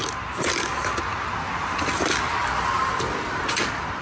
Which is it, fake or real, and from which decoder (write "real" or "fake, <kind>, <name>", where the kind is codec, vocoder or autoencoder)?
real